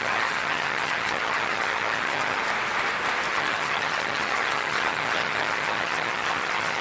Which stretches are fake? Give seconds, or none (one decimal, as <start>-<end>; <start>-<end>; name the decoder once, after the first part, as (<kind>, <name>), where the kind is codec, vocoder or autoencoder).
0.0-2.4 (vocoder, HiFi-GAN); 3.3-6.8